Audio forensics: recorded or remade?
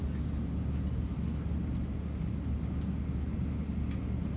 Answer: recorded